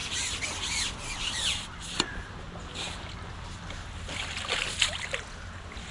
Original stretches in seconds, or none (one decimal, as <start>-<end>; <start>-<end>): 0.0-5.9